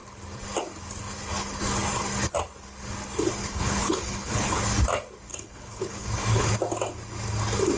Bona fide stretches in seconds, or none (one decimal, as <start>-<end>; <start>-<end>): 0.0-3.4; 4.6-5.3; 6.5-7.8